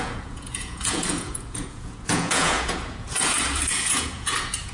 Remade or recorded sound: remade